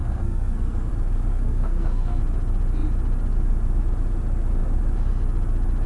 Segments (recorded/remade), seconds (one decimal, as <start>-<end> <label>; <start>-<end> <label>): 0.0-0.9 remade; 0.9-1.3 recorded; 1.3-2.2 remade; 2.2-5.9 recorded